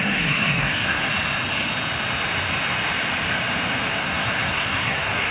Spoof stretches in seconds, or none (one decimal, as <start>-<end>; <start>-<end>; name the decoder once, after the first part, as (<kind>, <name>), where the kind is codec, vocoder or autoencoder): 0.0-1.1 (codec, SNAC); 3.9-5.3